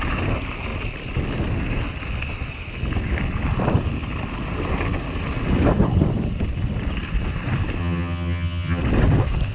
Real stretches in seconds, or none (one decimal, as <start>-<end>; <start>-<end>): 0.0-7.8; 8.8-9.5